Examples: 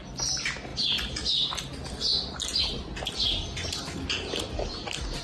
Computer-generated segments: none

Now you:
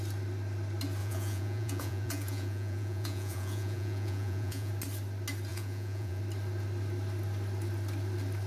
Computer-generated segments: 1.0-4.7 (vocoder, Vocos); 5.5-6.2